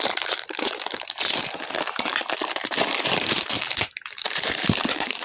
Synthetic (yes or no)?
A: yes